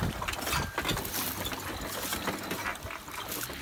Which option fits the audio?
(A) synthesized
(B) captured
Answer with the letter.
B